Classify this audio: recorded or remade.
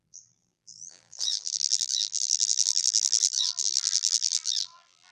remade